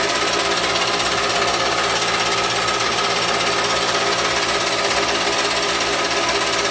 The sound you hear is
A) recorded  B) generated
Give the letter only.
A